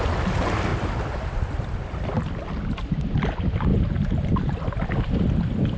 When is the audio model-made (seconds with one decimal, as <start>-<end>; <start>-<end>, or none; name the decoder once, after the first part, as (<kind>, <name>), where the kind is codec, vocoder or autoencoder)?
none